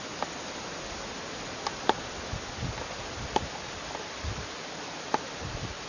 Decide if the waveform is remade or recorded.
recorded